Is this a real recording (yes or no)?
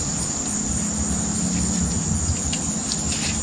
yes